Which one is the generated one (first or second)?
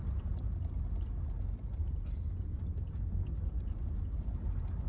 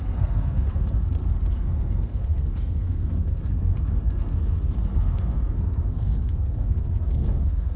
second